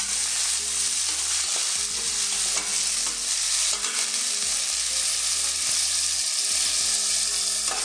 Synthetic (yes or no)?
no